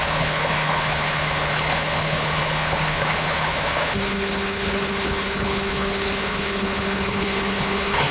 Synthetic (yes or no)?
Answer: yes